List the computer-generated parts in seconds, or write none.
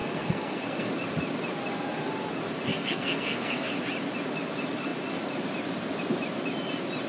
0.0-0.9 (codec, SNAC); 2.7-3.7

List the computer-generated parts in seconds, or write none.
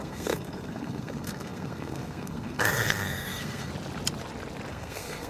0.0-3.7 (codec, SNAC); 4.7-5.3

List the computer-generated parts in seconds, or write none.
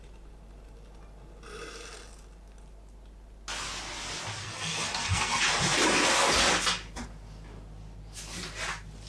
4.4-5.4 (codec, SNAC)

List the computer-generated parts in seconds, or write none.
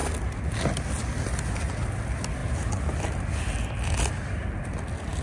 none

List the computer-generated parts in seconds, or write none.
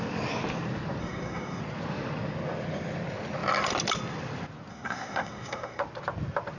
1.0-1.6 (codec, SNAC); 4.7-5.8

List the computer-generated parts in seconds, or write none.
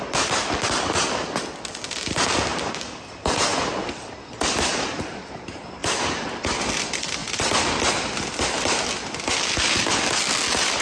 none